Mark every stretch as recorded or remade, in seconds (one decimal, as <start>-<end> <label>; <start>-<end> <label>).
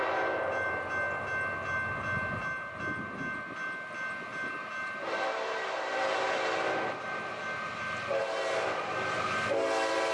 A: 0.0-10.1 recorded